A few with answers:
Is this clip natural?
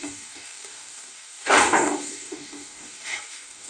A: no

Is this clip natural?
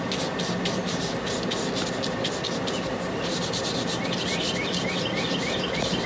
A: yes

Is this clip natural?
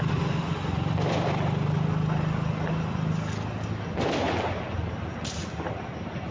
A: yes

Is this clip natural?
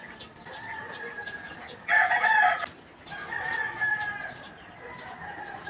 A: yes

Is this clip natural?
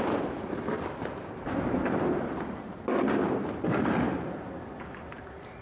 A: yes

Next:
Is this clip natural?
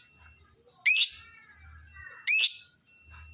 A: yes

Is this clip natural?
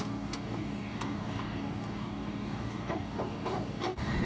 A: no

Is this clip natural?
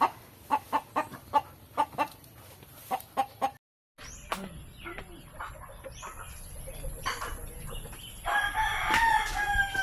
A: yes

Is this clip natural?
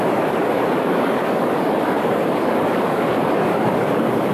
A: no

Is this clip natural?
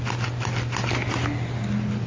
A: yes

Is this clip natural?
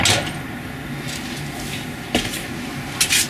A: yes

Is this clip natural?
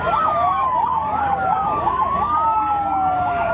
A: no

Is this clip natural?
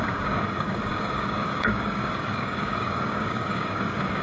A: no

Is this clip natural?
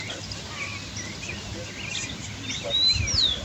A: yes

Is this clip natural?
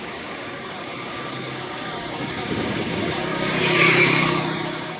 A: no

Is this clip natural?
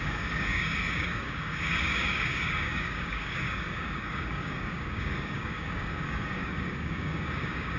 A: no